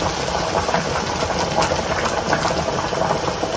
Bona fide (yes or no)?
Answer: yes